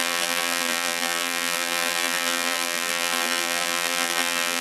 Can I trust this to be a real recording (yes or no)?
no